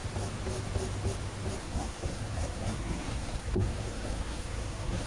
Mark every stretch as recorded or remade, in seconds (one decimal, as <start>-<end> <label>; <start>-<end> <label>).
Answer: 0.0-1.6 recorded; 1.6-5.1 remade